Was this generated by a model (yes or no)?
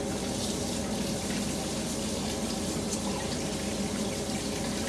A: no